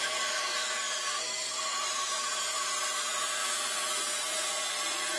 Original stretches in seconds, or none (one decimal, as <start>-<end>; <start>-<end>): 0.0-3.4; 4.0-5.2